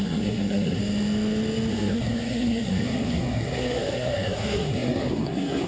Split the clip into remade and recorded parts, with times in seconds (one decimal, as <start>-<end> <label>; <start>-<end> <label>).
0.0-0.8 remade; 0.8-1.7 recorded; 1.7-5.7 remade